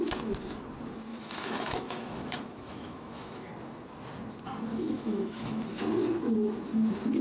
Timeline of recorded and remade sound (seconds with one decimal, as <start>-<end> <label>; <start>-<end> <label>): 0.0-1.1 recorded; 1.1-3.5 remade; 3.5-4.7 recorded; 4.7-5.8 remade; 5.8-7.2 recorded